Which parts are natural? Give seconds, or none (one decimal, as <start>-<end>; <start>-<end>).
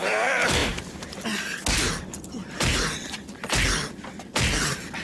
0.0-5.0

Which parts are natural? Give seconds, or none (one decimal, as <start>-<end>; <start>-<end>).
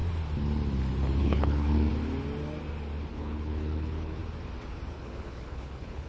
0.0-1.2; 1.9-3.1; 4.2-4.9